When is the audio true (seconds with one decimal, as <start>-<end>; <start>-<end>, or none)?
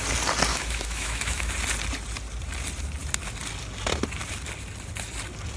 0.0-0.5; 1.5-5.6